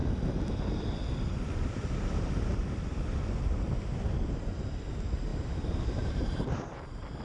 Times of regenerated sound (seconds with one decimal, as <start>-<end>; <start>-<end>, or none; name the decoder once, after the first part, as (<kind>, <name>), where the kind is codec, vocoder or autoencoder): 4.3-7.2 (vocoder, BigVGAN v2)